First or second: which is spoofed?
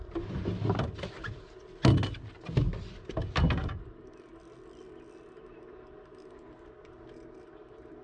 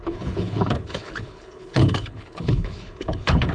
second